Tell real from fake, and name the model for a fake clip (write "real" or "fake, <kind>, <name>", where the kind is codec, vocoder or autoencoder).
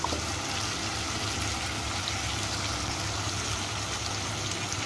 real